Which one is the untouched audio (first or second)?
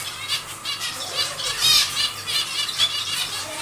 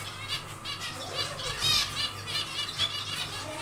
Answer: second